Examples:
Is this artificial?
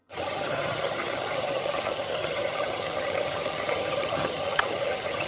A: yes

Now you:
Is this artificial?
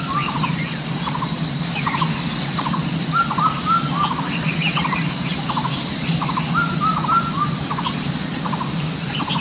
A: no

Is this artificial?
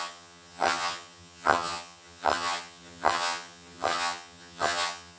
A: yes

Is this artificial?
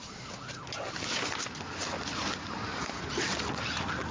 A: no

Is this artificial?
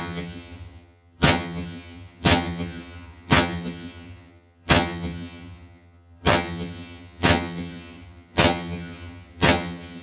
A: yes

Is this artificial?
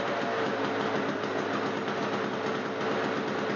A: no